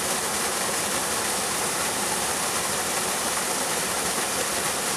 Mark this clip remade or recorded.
recorded